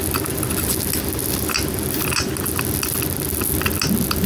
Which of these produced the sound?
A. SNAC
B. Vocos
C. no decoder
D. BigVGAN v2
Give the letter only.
C